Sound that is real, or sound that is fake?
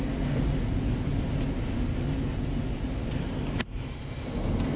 real